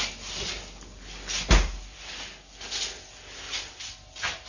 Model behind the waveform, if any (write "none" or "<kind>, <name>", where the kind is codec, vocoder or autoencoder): none